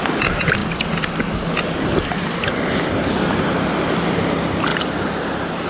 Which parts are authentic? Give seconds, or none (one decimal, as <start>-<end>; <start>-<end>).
0.0-5.7